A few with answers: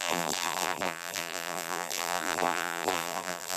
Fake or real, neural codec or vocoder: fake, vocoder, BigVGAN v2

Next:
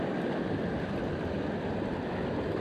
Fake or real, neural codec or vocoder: real